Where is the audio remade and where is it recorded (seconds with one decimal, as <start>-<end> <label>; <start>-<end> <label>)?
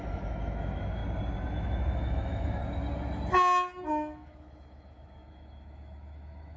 0.0-1.0 remade; 1.0-1.5 recorded; 1.5-2.6 remade; 2.6-3.9 recorded; 3.9-6.6 remade